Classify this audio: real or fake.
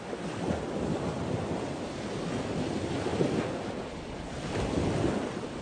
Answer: real